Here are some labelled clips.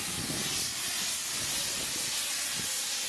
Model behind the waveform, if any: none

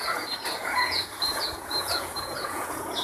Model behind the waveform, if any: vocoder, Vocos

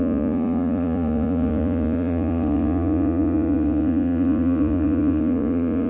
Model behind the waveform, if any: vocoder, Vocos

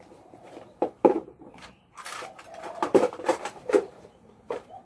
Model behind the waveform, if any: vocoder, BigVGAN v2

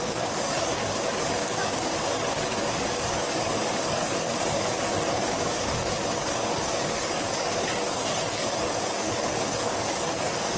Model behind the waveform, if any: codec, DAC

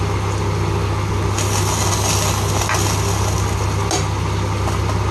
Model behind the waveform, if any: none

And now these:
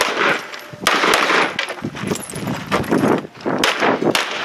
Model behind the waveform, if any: none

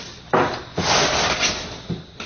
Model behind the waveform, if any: none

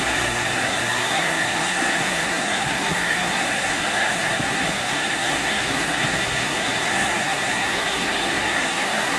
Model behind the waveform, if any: codec, SNAC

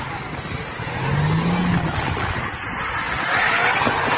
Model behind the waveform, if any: none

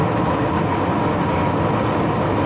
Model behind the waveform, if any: none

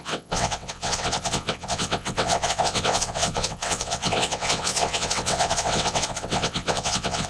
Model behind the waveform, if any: vocoder, WaveNeXt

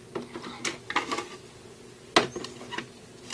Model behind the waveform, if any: none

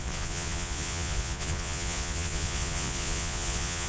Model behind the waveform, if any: vocoder, Vocos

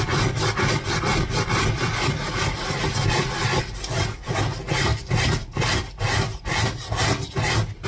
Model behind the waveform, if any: none